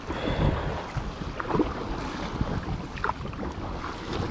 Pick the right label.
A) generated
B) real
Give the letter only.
B